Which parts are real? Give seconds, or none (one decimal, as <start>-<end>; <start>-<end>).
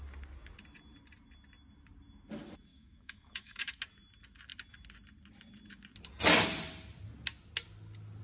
0.0-2.7; 3.8-8.2